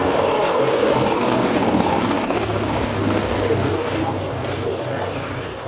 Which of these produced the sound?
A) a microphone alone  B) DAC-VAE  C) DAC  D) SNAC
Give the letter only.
C